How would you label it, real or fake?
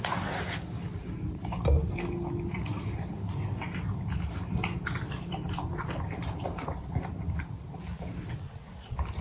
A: real